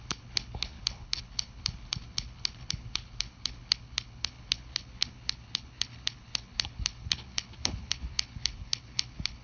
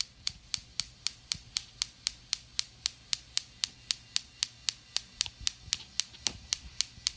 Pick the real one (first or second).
second